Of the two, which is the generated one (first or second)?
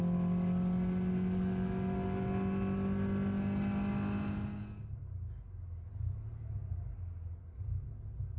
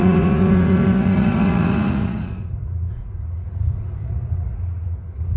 second